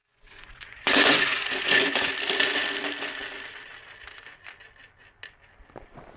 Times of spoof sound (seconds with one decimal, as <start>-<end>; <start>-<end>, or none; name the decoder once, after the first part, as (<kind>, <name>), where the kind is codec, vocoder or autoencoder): 0.0-2.1 (vocoder, Vocos)